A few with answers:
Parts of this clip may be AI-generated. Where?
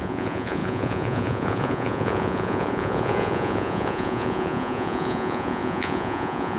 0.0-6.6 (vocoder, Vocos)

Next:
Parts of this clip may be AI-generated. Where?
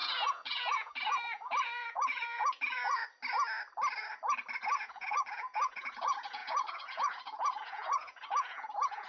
0.0-3.0 (vocoder, Vocos); 4.6-9.1